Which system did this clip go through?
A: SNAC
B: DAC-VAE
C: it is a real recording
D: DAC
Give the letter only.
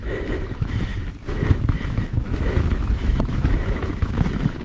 B